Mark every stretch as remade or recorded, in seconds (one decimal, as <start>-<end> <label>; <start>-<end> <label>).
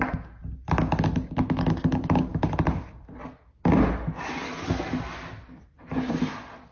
0.0-6.7 recorded